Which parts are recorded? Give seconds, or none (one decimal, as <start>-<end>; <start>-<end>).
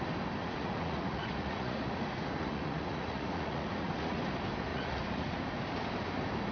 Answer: 0.0-0.4; 4.2-4.7; 5.4-6.5